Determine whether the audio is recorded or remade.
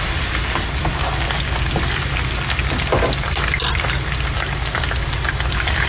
recorded